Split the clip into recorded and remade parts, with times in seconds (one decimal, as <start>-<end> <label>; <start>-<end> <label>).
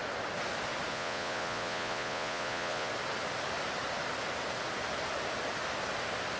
0.0-0.9 recorded; 0.9-2.9 remade; 2.9-6.4 recorded